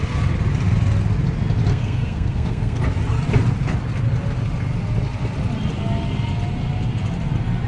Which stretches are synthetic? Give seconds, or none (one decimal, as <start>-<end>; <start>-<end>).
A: 1.7-2.8